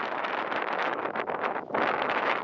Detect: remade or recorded remade